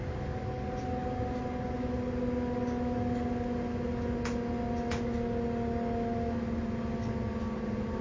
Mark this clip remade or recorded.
recorded